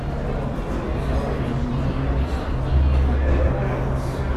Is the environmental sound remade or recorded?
recorded